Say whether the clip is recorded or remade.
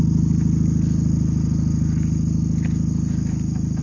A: recorded